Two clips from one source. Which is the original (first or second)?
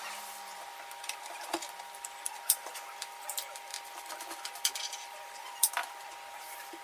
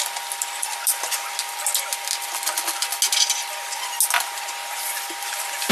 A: second